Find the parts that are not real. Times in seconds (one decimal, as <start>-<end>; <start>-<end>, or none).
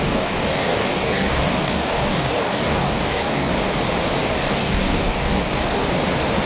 0.0-3.5; 4.3-5.8